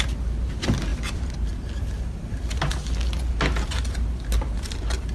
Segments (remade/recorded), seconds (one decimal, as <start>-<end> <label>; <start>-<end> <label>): 0.0-5.1 recorded